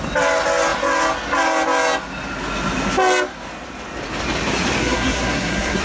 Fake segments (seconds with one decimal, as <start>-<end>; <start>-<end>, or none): 4.8-5.8